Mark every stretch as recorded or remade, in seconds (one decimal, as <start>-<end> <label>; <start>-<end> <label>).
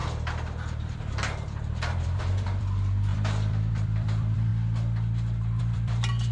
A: 0.0-4.5 remade; 4.5-5.6 recorded; 5.6-6.3 remade